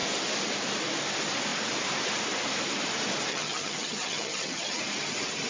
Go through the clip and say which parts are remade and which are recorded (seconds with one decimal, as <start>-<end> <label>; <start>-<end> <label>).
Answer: 0.0-3.3 recorded; 3.3-4.8 remade; 4.8-5.5 recorded

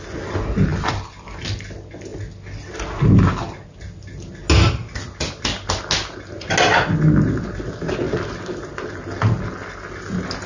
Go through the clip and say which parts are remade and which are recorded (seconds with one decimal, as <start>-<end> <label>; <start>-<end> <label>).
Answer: 0.0-10.5 recorded